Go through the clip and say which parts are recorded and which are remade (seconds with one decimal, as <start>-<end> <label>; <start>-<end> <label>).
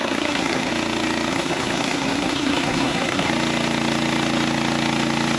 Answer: 0.0-0.7 remade; 0.7-1.3 recorded; 1.3-3.3 remade; 3.3-5.4 recorded